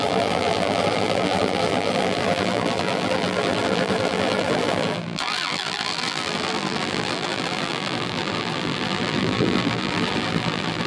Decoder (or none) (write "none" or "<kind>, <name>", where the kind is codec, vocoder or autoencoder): vocoder, BigVGAN v2